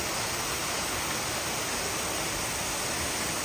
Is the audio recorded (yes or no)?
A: yes